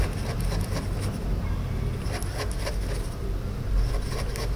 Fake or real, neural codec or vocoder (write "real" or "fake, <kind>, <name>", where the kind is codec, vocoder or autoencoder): real